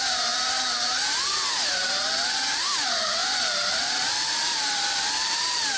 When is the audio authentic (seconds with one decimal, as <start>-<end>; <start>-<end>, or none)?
none